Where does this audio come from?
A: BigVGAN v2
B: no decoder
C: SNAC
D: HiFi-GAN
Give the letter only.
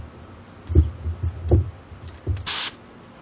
B